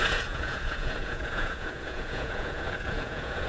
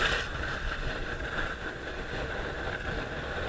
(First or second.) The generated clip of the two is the first